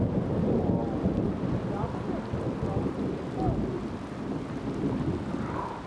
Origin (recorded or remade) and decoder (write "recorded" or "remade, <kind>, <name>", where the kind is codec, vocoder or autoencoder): recorded